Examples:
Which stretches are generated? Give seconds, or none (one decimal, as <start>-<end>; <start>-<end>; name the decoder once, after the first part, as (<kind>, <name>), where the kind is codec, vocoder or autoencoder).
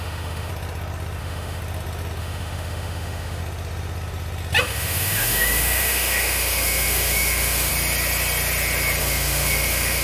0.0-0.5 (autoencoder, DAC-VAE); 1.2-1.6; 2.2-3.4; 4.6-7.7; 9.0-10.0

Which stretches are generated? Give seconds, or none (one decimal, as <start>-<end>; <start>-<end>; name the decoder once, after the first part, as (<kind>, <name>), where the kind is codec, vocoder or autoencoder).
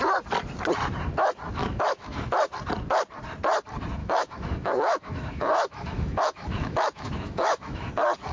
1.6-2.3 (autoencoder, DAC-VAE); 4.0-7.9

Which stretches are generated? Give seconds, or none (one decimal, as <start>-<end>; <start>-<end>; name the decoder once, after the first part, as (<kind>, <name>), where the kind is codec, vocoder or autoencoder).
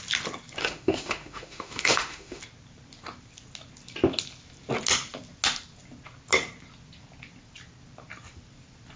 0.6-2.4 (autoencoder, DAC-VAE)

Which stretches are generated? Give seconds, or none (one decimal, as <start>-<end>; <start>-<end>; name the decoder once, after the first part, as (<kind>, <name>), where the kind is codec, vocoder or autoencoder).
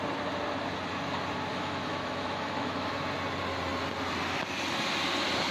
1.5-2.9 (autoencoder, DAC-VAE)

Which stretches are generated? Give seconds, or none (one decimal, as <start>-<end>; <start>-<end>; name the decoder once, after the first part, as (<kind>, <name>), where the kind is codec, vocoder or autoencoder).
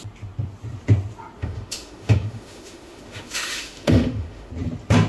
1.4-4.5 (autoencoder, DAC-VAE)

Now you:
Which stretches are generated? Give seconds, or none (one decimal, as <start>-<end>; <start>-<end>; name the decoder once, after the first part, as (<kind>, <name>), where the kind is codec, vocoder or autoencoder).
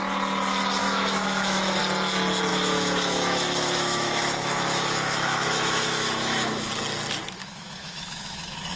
0.8-1.8 (autoencoder, DAC-VAE); 2.5-6.7; 7.4-8.8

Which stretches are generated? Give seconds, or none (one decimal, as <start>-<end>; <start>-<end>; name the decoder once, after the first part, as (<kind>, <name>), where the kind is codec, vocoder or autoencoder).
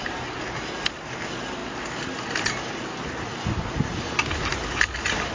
none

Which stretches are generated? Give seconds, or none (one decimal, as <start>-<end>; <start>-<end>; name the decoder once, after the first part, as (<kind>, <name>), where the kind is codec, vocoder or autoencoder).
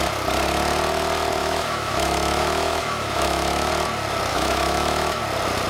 1.4-3.7 (autoencoder, DAC-VAE); 4.3-5.2